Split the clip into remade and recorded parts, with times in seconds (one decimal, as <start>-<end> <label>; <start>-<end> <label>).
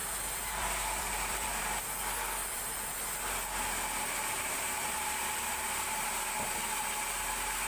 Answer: 0.0-1.6 remade; 1.6-2.4 recorded; 2.4-3.0 remade; 3.0-7.7 recorded